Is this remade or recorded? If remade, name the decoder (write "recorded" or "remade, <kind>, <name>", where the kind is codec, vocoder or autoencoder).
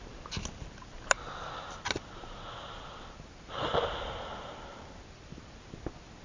recorded